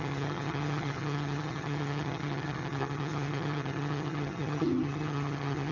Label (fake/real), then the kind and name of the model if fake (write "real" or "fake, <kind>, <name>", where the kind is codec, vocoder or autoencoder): fake, vocoder, HiFi-GAN